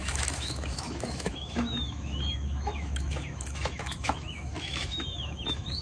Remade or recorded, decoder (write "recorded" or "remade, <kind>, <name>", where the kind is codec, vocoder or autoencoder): remade, autoencoder, DAC-VAE